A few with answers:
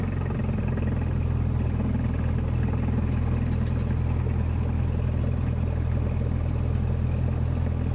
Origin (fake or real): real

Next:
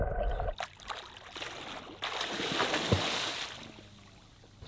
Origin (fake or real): real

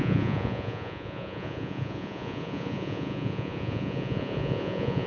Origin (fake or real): fake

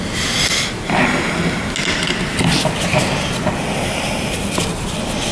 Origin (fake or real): real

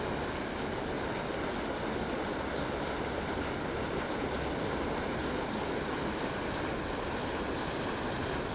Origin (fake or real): real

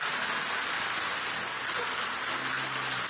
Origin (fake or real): real